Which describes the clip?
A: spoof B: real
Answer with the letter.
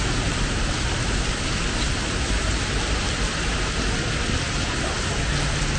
B